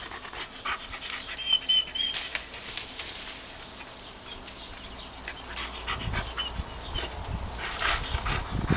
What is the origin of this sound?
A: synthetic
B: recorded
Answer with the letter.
B